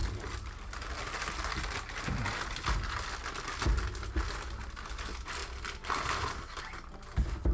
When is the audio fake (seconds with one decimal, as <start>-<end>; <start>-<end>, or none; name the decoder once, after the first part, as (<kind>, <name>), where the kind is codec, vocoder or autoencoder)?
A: none